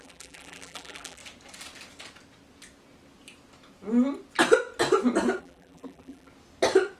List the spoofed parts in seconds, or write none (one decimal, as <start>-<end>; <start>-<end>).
0.0-1.2; 5.4-6.3